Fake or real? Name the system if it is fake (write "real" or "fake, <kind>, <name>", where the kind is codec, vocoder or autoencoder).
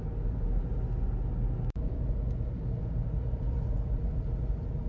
real